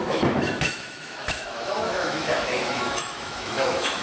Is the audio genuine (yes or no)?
no